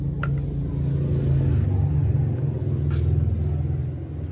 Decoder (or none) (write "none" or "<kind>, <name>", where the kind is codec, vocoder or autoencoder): none